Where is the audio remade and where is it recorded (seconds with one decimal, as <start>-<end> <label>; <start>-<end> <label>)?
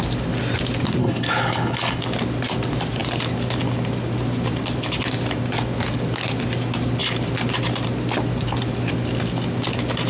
0.0-1.0 recorded; 1.0-2.0 remade; 2.0-10.1 recorded